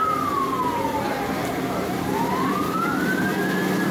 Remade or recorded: recorded